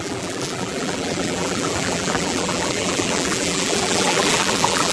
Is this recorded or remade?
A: remade